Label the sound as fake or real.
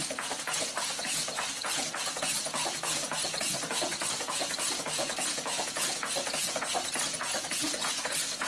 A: fake